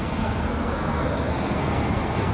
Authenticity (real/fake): fake